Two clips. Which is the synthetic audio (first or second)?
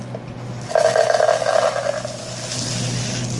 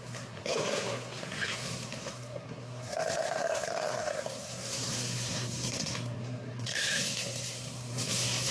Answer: second